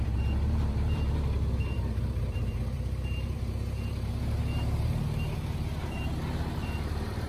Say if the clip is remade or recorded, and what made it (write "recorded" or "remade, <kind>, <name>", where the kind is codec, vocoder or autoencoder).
remade, vocoder, BigVGAN v2